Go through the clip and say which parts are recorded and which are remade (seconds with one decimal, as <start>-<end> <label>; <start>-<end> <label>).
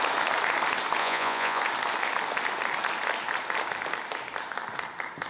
0.0-1.0 recorded; 1.0-1.6 remade; 1.6-5.3 recorded